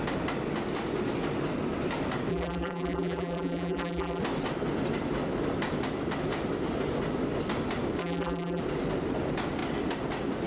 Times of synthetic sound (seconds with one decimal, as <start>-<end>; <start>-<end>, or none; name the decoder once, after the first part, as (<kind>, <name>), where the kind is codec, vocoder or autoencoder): 2.3-4.2 (vocoder, BigVGAN v2); 8.0-8.6

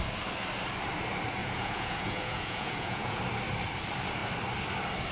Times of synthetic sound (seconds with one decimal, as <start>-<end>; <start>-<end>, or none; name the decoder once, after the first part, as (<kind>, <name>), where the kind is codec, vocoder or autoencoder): 1.4-3.2 (vocoder, Vocos)

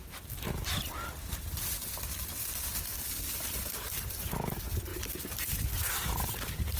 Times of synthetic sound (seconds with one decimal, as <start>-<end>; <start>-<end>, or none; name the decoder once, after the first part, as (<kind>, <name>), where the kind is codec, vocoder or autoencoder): none

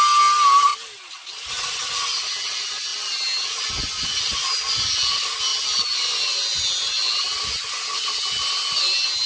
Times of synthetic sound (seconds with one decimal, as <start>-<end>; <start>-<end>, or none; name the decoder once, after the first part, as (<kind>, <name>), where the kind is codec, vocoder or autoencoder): none

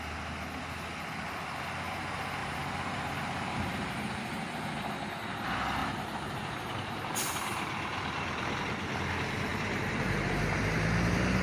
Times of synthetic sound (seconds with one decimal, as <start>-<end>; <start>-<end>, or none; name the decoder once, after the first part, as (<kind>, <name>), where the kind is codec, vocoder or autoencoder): 2.4-3.9 (vocoder, BigVGAN v2); 5.8-7.1; 9.5-10.6

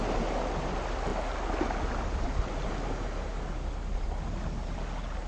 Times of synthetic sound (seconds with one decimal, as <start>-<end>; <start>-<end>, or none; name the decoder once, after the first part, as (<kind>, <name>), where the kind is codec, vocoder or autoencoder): none

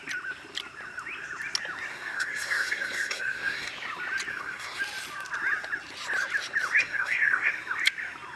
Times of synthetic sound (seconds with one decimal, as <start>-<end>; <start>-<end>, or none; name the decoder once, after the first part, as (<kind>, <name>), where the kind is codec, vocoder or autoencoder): 1.9-3.7 (codec, SNAC); 4.3-4.8; 6.8-7.5

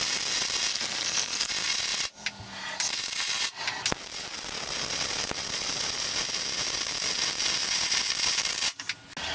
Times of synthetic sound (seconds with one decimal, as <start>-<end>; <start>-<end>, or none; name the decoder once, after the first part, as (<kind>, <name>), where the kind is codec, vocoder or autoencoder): 0.7-1.5 (codec, SNAC)